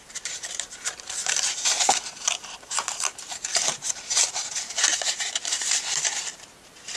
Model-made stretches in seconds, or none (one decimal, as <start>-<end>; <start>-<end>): 0.0-7.0